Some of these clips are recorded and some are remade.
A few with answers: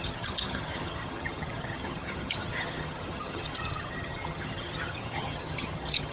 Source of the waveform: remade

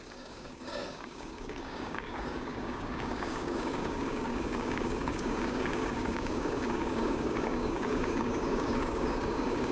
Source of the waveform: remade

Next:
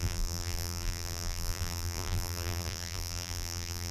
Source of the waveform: remade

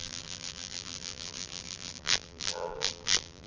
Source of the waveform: remade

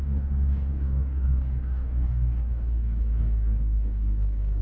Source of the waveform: remade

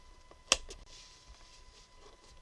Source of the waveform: recorded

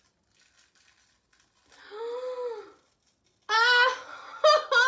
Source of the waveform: recorded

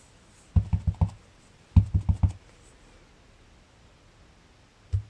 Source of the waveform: recorded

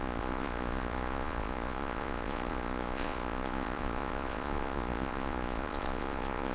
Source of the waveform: remade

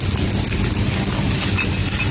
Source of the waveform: recorded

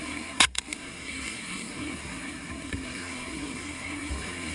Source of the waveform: remade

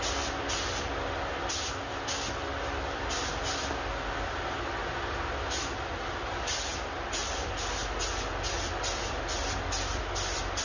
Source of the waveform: recorded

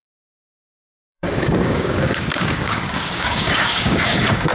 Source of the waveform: remade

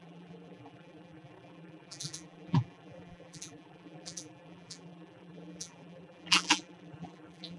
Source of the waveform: remade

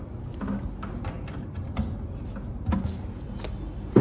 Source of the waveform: recorded